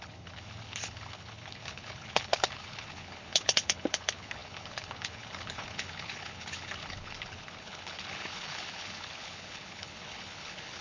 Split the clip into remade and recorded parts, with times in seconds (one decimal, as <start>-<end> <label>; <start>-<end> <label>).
0.0-10.8 remade